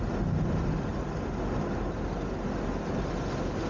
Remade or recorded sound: recorded